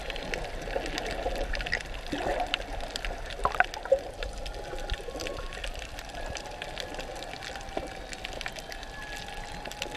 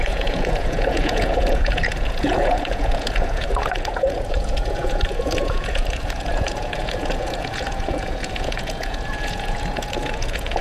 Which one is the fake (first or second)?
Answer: second